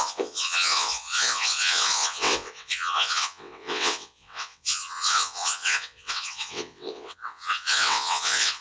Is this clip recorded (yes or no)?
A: no